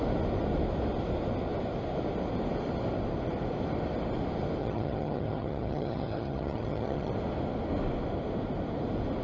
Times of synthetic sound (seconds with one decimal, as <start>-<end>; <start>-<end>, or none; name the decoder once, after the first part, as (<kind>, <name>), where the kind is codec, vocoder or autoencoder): 4.6-7.1 (vocoder, HiFi-GAN)